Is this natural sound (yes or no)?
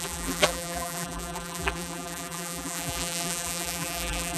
no